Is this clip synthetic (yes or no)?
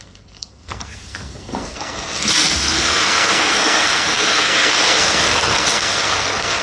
yes